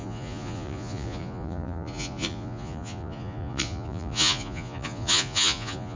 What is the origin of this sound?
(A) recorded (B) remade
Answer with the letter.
B